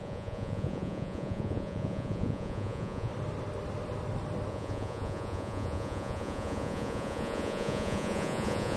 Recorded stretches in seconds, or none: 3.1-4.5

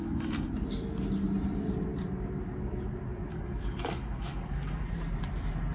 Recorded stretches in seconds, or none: 0.5-3.3; 4.9-5.7

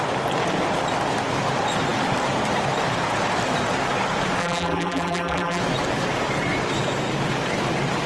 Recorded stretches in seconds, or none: 0.0-4.4; 5.6-8.1